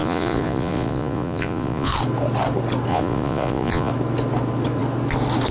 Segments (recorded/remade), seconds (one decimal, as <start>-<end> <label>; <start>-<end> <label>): 0.0-1.9 remade; 1.9-2.9 recorded; 2.9-3.9 remade; 3.9-5.5 recorded